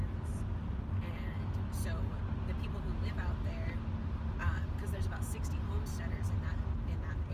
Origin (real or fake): real